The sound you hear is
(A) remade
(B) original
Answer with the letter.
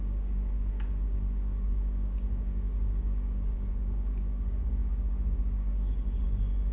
A